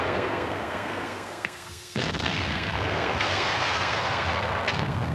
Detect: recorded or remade remade